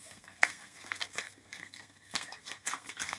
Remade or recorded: remade